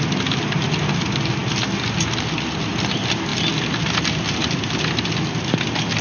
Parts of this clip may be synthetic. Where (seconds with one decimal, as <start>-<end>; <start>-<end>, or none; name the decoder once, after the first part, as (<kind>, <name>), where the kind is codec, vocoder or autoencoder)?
none